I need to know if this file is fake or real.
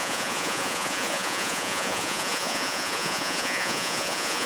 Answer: fake